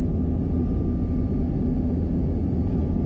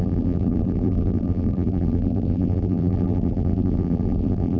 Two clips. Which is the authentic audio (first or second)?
first